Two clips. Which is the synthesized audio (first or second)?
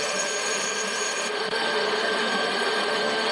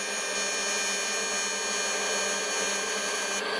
first